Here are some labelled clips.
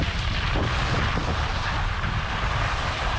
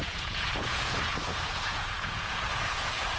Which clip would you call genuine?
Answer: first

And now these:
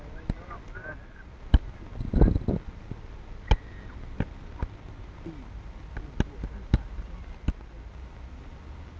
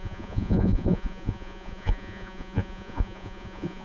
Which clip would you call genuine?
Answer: first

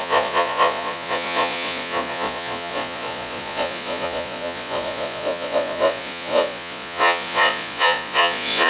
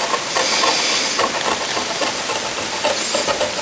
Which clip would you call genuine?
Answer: second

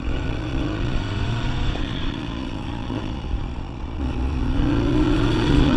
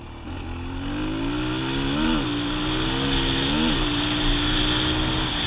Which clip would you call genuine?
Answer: second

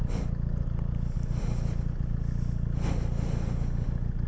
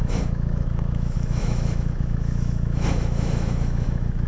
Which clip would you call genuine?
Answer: first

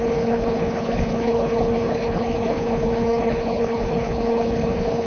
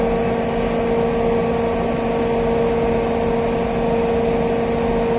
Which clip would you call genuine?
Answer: second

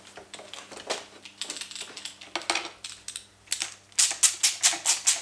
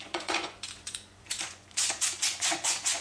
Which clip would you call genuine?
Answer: first